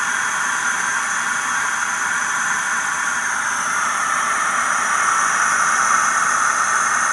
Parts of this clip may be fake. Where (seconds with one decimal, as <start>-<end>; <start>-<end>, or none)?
none